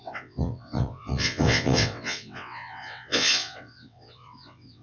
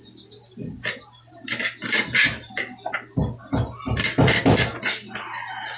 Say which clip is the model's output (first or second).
first